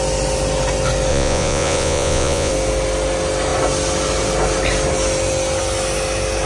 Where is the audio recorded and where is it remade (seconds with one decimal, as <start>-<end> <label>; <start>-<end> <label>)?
0.0-1.1 recorded; 1.1-2.5 remade; 2.5-6.5 recorded